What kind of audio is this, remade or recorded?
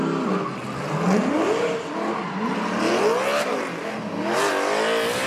recorded